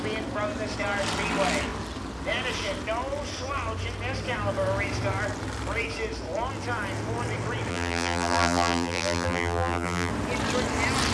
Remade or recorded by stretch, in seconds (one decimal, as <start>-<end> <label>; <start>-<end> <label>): 0.0-7.7 recorded; 7.7-10.1 remade; 10.1-11.1 recorded